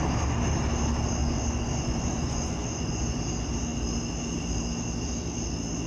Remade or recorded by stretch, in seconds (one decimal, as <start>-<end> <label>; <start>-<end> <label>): 0.0-1.2 recorded; 1.2-3.2 remade; 3.2-5.9 recorded